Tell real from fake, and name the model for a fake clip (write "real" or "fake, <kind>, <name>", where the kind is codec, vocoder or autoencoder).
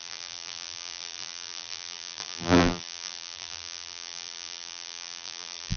fake, vocoder, BigVGAN v2